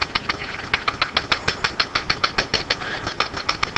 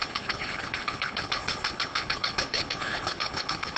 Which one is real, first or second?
first